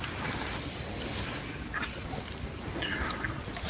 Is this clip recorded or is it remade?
recorded